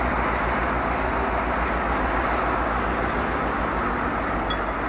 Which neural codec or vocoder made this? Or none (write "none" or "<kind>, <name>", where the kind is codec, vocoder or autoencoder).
none